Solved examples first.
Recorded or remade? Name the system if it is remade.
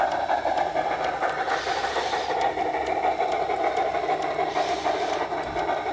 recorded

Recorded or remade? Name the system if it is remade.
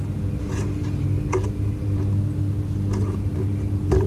recorded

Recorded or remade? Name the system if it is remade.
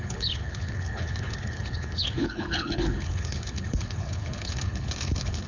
remade, codec, HILCodec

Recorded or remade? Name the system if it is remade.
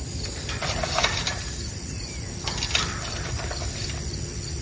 recorded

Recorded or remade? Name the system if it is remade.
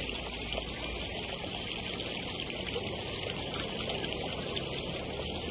recorded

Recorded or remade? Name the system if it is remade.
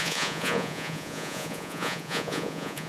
remade, vocoder, Vocos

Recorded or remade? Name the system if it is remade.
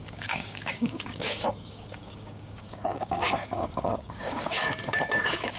remade, codec, DAC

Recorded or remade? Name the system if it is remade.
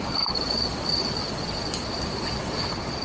remade, vocoder, Vocos